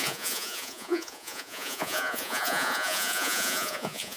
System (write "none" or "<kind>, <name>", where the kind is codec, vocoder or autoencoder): vocoder, Vocos